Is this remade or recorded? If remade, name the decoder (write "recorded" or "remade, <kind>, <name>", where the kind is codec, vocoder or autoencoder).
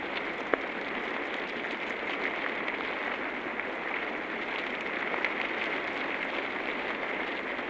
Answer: recorded